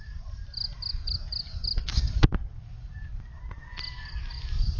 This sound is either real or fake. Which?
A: real